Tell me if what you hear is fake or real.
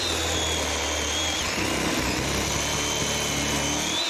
real